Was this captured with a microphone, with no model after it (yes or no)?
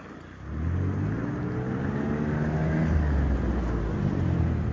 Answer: yes